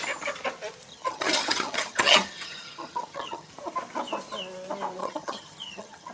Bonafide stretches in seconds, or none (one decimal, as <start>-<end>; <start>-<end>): 0.0-0.9; 3.5-5.0